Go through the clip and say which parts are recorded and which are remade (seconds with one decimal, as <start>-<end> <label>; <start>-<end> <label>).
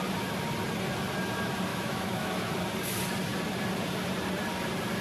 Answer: 0.0-1.7 recorded; 1.7-2.5 remade; 2.5-5.0 recorded